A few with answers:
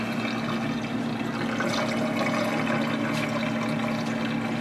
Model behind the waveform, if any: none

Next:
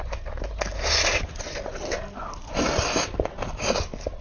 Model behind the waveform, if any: none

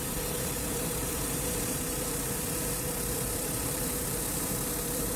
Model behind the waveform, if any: vocoder, BigVGAN v2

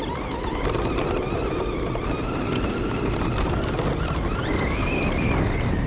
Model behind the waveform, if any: none